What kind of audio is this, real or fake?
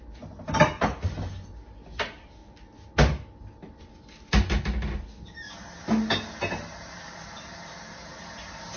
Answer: real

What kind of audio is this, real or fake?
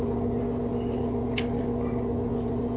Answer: real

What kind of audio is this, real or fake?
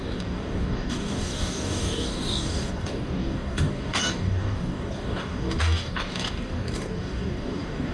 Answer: fake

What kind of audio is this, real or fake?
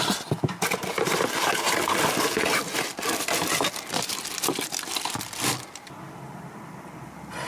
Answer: real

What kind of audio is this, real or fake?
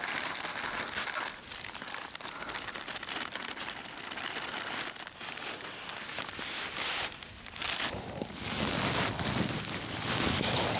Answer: real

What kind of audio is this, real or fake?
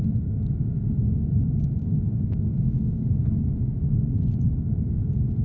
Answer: fake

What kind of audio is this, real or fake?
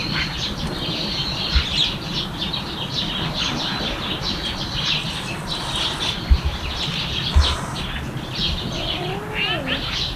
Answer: real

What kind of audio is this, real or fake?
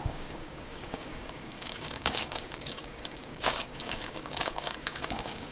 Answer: fake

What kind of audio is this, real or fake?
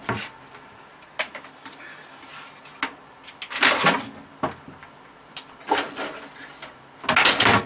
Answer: real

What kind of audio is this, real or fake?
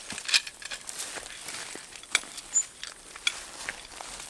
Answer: real